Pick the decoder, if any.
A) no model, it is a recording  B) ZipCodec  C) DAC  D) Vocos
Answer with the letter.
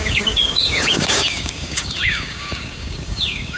C